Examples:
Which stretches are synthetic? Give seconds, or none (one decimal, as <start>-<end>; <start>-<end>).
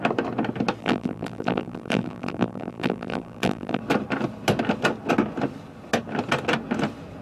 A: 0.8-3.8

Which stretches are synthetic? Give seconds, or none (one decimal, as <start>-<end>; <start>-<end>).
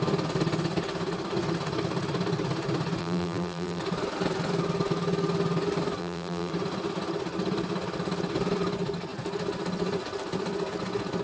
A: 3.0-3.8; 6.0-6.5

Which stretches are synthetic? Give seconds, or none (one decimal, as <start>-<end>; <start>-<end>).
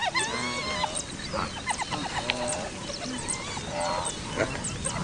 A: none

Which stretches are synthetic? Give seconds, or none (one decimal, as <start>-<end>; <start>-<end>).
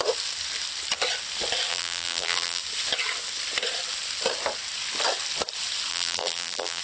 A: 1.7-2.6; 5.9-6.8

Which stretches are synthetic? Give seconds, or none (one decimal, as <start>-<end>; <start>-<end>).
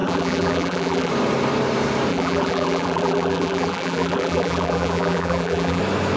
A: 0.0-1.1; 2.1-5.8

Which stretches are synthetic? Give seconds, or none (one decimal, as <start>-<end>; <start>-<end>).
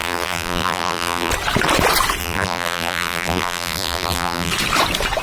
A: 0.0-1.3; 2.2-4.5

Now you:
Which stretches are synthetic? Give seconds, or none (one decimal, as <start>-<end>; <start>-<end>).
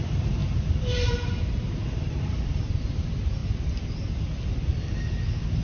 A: 0.0-3.4